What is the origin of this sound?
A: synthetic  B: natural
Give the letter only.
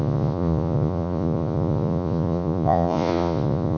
A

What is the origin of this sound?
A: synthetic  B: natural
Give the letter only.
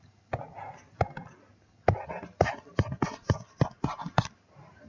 B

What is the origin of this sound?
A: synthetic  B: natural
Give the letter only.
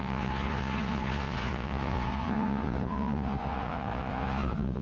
A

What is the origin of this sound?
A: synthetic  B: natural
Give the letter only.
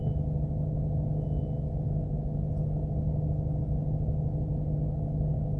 B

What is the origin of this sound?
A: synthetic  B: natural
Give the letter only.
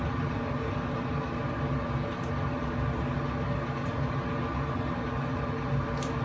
B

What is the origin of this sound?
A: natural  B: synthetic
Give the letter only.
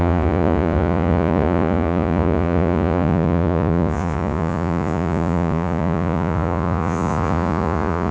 B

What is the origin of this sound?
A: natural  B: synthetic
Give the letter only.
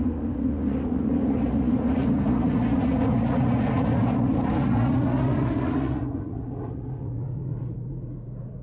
B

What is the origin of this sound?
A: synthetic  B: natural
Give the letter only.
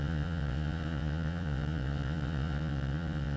A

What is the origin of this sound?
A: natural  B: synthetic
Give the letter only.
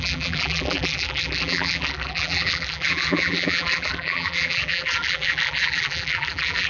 B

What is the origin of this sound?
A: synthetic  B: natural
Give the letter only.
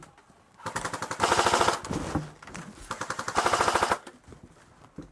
B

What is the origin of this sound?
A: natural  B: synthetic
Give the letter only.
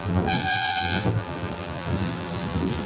B